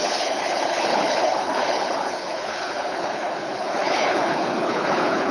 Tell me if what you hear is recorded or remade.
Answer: remade